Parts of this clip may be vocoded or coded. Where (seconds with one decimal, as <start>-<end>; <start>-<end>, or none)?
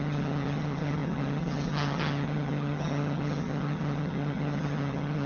0.0-5.3